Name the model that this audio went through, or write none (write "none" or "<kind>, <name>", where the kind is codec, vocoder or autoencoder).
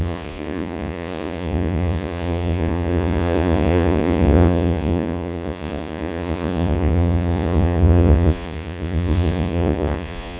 vocoder, Vocos